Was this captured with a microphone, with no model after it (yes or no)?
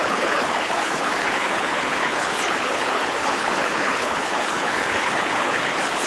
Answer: no